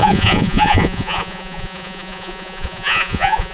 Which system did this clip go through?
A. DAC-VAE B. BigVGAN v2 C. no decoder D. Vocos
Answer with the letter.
D